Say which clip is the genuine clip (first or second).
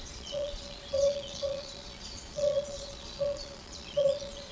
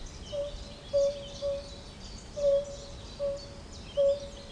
second